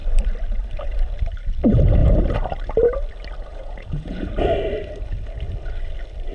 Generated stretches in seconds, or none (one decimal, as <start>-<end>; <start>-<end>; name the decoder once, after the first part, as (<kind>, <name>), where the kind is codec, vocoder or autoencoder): 3.5-4.3 (vocoder, Vocos)